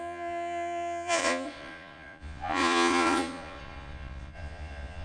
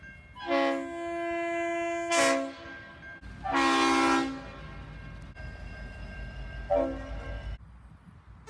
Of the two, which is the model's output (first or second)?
first